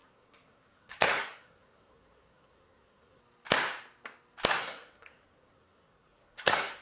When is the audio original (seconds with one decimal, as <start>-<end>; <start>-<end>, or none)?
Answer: 3.2-4.6